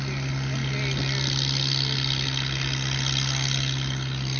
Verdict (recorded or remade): recorded